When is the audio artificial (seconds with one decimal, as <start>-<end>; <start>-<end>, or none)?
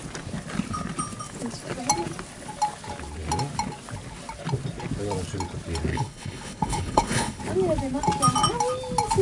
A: 5.9-7.4